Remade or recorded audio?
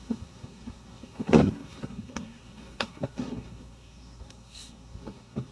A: remade